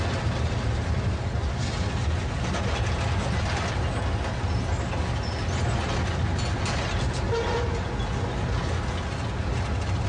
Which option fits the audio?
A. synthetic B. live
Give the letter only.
B